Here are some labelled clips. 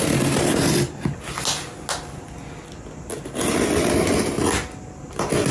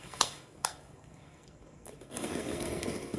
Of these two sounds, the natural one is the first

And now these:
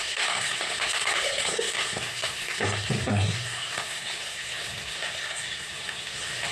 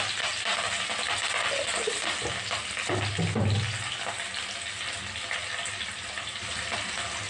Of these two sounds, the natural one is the second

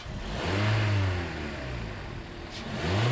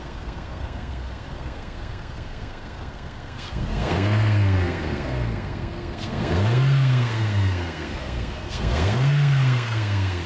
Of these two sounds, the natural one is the first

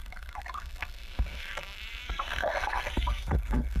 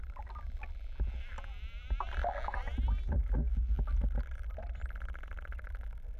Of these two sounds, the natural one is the second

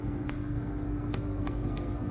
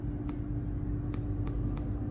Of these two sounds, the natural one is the second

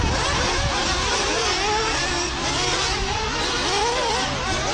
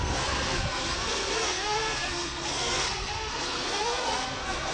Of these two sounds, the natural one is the first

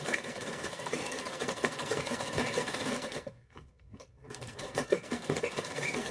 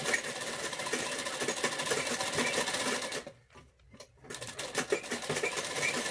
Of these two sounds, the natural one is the second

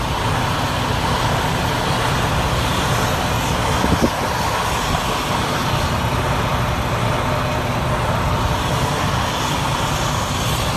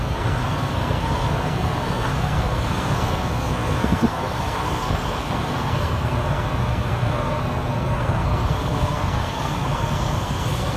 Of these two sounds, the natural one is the first